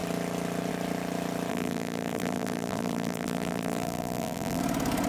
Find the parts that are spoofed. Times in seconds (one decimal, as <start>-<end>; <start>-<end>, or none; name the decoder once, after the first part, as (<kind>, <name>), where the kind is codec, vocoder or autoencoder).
1.5-4.6 (vocoder, BigVGAN v2)